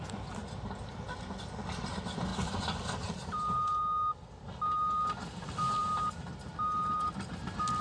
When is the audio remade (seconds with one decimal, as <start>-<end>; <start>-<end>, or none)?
5.8-6.3